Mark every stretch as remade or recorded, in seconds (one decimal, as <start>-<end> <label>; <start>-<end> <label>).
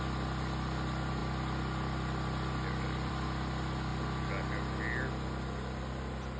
0.0-6.4 recorded